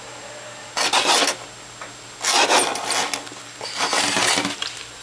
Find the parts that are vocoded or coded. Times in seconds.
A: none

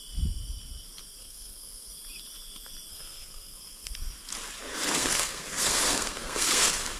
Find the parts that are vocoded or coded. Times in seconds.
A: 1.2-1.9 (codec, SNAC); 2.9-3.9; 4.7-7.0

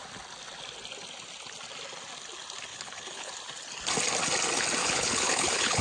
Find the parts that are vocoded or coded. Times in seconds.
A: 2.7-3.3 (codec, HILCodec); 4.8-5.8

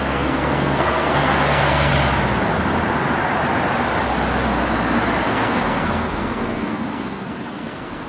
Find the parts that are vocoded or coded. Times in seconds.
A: 0.0-1.9 (codec, SNAC); 5.2-8.1

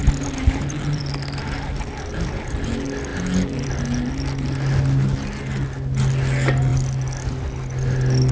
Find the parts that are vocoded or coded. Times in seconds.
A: none

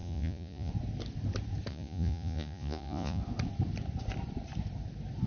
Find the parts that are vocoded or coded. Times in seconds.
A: 0.0-0.7 (vocoder, Vocos); 1.7-3.2

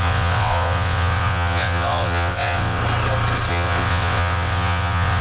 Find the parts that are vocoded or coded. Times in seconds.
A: 0.0-2.8 (vocoder, WaveNeXt); 3.5-5.2